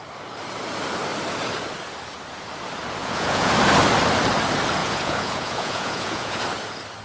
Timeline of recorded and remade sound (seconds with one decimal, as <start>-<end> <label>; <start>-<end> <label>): 0.0-3.0 recorded; 3.0-3.5 remade; 3.5-4.8 recorded; 4.8-6.4 remade; 6.4-7.0 recorded